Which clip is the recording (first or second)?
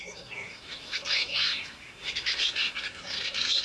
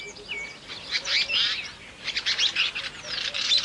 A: second